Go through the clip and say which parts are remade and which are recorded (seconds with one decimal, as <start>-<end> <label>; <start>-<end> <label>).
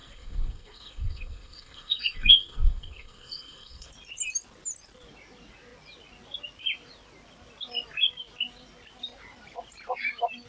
0.0-3.9 remade; 3.9-10.5 recorded